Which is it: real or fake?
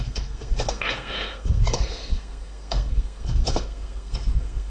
fake